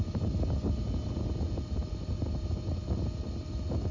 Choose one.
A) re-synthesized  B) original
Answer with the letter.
B